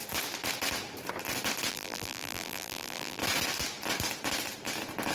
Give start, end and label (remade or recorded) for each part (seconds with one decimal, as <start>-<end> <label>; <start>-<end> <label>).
0.0-1.7 recorded; 1.7-3.2 remade; 3.2-5.1 recorded